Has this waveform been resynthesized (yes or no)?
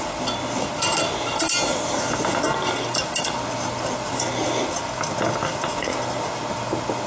no